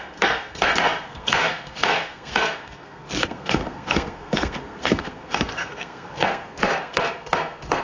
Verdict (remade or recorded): remade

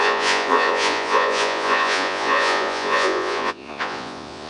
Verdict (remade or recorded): remade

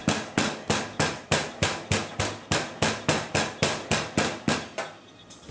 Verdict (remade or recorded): recorded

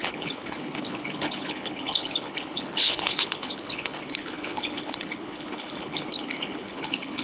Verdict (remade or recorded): remade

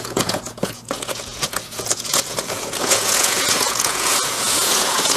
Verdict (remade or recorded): remade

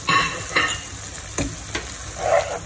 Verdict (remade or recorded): recorded